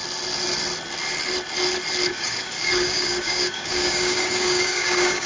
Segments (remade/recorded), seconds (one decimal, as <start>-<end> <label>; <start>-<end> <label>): 0.0-2.1 recorded; 2.1-5.3 remade